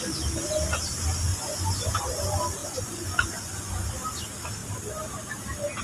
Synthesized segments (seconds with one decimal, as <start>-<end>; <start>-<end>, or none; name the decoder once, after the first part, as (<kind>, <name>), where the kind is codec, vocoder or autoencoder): 1.3-1.9 (vocoder, Vocos); 2.6-3.9